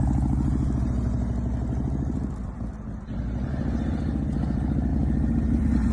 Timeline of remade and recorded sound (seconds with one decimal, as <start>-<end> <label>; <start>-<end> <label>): 0.0-5.9 recorded